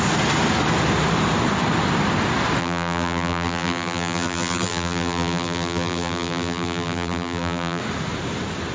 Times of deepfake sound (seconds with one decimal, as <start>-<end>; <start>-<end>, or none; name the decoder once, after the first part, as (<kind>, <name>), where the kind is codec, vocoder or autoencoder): 2.6-7.8 (vocoder, BigVGAN v2)